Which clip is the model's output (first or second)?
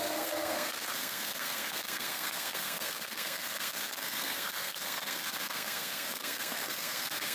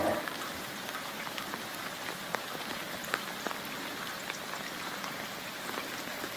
first